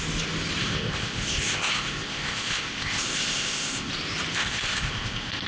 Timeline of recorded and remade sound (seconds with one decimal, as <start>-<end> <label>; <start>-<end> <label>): 0.0-0.6 recorded; 0.6-3.9 remade; 3.9-4.3 recorded; 4.3-5.5 remade